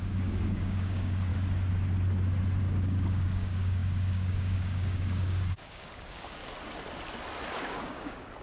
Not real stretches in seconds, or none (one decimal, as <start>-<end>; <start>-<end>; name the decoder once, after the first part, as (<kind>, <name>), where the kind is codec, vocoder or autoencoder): 0.0-1.3 (codec, DAC); 2.6-6.4; 7.6-8.4